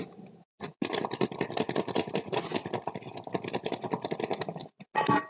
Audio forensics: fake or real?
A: real